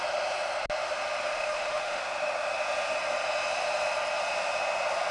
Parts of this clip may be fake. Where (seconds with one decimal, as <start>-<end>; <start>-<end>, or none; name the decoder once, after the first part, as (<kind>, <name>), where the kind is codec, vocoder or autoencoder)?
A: 1.3-2.0 (autoencoder, DAC-VAE)